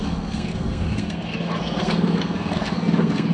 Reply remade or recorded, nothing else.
remade